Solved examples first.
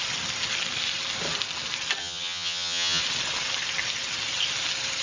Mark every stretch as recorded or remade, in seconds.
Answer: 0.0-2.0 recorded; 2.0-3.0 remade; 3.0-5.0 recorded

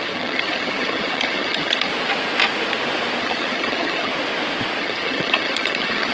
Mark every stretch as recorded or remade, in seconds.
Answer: 0.0-1.9 remade; 1.9-3.2 recorded; 3.2-4.1 remade; 4.1-4.8 recorded; 4.8-6.1 remade

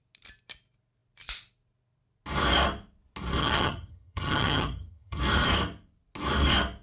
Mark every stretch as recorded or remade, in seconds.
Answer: 0.0-3.4 recorded; 3.4-5.2 remade; 5.2-6.8 recorded

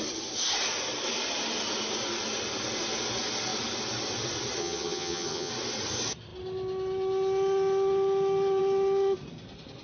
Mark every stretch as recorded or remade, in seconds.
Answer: 0.0-4.6 recorded; 4.6-5.5 remade; 5.5-9.8 recorded